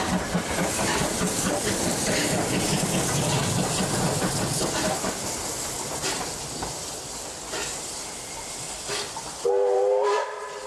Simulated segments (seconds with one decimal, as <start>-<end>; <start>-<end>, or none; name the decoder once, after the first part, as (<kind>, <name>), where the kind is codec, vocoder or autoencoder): none